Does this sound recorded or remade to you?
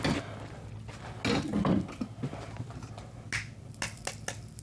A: recorded